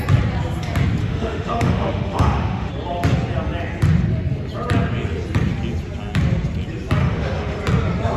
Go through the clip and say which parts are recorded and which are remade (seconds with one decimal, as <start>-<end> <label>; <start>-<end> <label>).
0.0-1.0 recorded; 1.0-2.7 remade; 2.7-7.0 recorded; 7.0-7.6 remade; 7.6-8.2 recorded